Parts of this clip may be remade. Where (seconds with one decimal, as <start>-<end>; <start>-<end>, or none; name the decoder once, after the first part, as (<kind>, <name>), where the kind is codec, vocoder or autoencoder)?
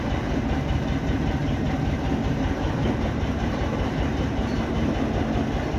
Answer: 1.4-4.9 (vocoder, BigVGAN v2)